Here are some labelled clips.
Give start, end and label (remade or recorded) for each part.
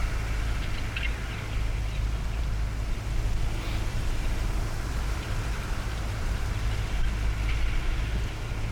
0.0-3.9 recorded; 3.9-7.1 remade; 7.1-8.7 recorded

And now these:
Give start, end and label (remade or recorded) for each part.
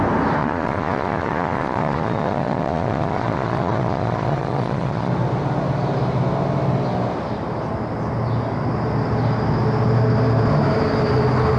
0.0-0.4 recorded; 0.4-5.1 remade; 5.1-11.6 recorded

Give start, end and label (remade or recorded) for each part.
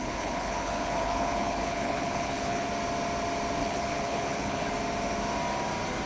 0.0-2.7 remade; 2.7-3.6 recorded; 3.6-4.7 remade; 4.7-6.1 recorded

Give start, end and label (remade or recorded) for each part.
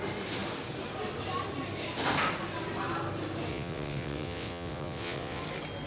0.0-3.5 recorded; 3.5-5.4 remade; 5.4-5.9 recorded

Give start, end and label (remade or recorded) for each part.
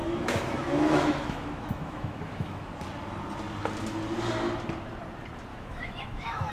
0.0-2.7 remade; 2.7-5.5 recorded; 5.5-6.5 remade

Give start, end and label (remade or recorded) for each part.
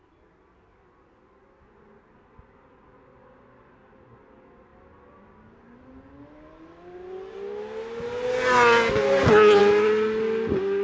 0.0-10.8 recorded